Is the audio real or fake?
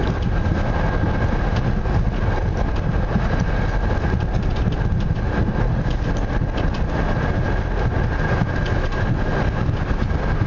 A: real